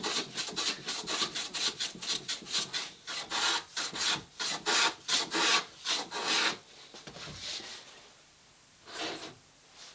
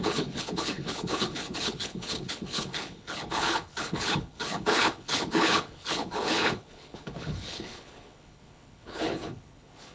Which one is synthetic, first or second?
second